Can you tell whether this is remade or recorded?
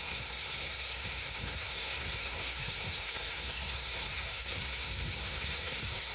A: remade